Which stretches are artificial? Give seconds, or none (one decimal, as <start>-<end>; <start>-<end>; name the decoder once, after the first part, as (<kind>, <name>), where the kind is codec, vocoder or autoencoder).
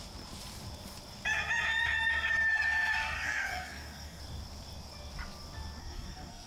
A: 2.9-4.2 (codec, SNAC); 5.8-6.5